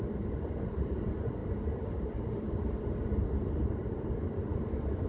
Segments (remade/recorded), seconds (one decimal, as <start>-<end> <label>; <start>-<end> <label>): 0.0-5.1 recorded